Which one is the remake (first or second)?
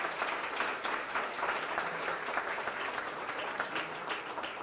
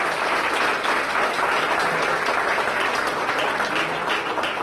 first